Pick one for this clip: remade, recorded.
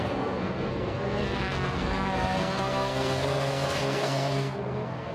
remade